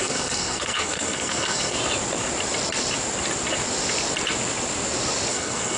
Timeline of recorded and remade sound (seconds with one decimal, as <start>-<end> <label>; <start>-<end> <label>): 0.0-1.8 remade; 1.8-5.3 recorded; 5.3-5.8 remade